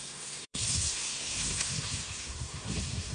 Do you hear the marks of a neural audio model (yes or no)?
yes